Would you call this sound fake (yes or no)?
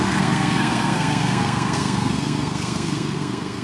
yes